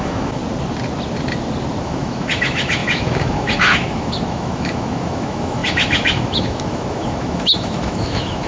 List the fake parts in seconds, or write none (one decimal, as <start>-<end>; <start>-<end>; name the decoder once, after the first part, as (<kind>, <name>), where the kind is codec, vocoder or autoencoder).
0.0-0.4 (autoencoder, DAC-VAE); 1.8-8.5